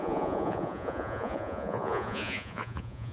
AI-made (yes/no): yes